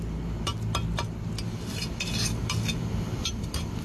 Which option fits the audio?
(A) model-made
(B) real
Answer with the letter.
B